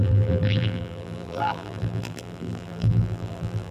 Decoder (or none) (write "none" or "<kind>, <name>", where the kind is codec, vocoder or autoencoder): vocoder, BigVGAN v2